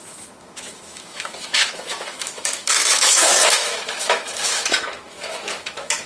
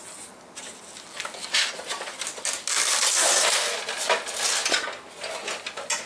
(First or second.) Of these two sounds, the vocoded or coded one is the first